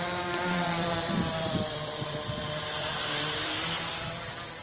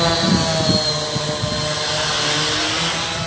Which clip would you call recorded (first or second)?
second